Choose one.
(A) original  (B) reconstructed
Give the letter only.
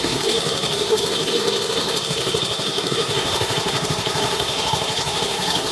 B